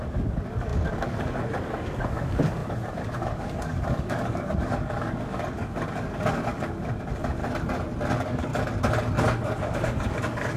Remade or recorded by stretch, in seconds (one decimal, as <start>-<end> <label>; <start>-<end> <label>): 0.0-7.4 remade; 7.4-8.1 recorded; 8.1-8.5 remade; 8.5-9.2 recorded; 9.2-10.6 remade